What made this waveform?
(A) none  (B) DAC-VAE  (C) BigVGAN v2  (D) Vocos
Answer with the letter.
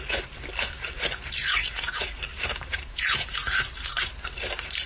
C